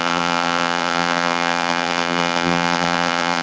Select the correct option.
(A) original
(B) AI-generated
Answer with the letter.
B